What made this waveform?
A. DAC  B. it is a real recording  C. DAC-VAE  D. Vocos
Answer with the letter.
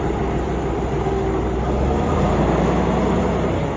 B